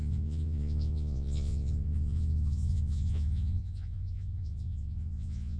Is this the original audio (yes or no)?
no